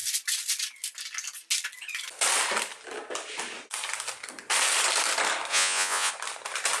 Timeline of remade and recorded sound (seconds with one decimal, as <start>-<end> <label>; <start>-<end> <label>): 0.0-5.5 recorded; 5.5-6.1 remade; 6.1-6.8 recorded

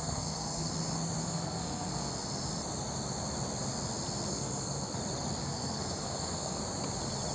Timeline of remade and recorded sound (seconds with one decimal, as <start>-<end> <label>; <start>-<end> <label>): 0.0-0.7 remade; 0.7-1.2 recorded; 1.2-2.1 remade; 2.1-4.3 recorded; 4.3-5.0 remade; 5.0-5.4 recorded; 5.4-6.6 remade; 6.6-7.3 recorded